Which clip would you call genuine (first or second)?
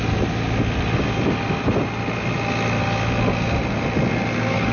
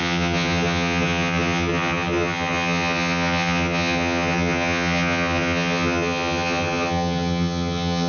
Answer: first